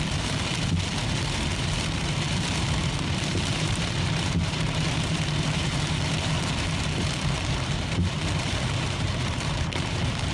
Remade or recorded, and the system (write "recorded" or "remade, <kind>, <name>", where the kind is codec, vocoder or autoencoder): remade, vocoder, BigVGAN v2